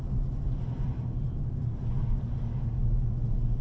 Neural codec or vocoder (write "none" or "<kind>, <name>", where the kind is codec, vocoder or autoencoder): none